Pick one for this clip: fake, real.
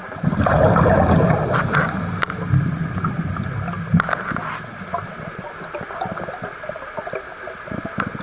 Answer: real